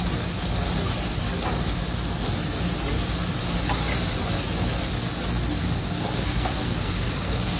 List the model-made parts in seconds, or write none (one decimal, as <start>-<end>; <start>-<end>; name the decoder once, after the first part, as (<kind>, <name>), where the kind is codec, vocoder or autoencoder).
5.6-7.6 (codec, SNAC)